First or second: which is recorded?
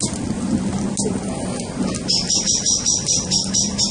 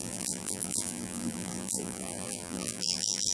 first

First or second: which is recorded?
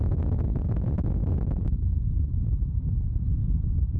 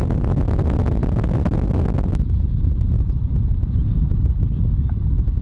second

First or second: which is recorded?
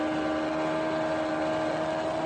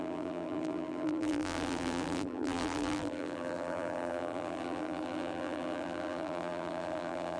first